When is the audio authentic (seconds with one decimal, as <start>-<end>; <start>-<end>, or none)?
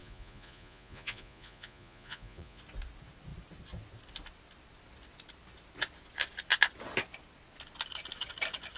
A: 2.6-8.8